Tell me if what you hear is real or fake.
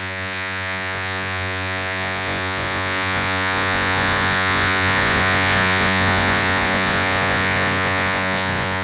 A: fake